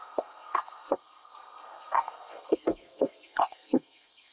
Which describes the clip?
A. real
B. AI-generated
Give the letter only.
B